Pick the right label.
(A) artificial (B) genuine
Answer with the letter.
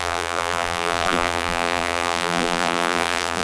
A